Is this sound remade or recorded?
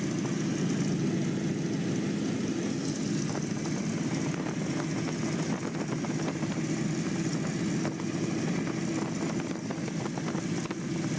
recorded